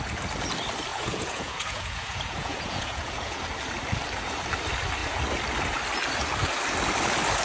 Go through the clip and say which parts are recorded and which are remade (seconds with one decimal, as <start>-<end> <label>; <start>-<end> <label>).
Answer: 0.0-0.9 recorded; 0.9-3.4 remade; 3.4-7.4 recorded